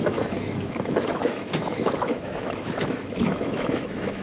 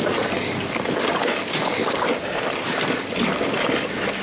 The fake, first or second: first